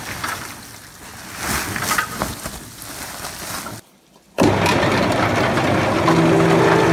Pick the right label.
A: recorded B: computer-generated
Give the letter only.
A